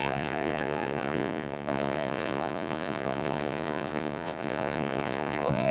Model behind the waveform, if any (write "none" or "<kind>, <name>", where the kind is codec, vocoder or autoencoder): vocoder, Vocos